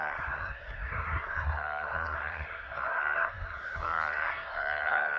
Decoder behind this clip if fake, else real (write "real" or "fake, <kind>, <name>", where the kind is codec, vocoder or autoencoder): fake, codec, SNAC